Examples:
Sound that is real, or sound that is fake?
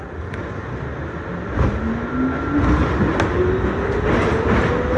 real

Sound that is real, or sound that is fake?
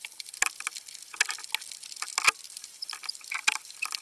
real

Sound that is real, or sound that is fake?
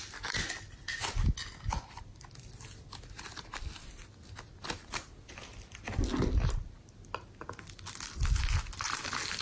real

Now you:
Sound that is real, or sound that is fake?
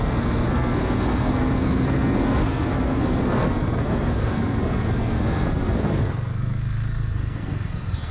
fake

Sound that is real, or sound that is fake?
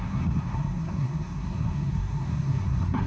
fake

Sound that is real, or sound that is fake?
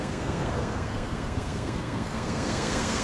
fake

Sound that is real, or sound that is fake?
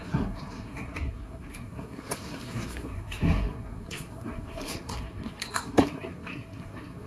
fake